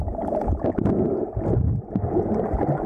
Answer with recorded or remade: recorded